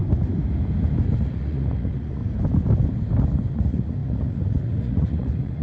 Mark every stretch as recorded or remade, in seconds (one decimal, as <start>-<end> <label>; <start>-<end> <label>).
0.0-1.2 recorded; 1.2-2.2 remade; 2.2-3.5 recorded; 3.5-5.6 remade